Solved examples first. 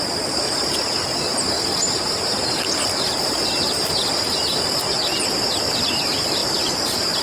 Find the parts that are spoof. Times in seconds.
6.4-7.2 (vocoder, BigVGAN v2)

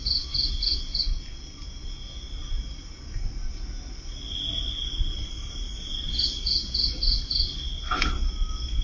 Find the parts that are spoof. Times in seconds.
1.0-1.7 (vocoder, BigVGAN v2)